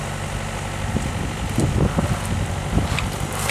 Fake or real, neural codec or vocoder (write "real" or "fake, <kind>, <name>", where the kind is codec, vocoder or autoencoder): real